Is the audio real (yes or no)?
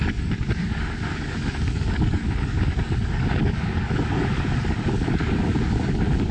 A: no